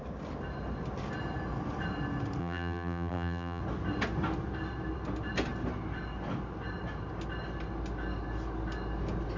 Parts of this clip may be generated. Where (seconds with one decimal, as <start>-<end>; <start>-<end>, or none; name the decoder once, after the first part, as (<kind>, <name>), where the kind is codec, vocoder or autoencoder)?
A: 2.4-3.6 (vocoder, BigVGAN v2)